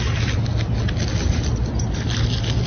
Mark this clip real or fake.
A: real